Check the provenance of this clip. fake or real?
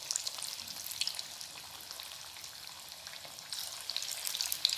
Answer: real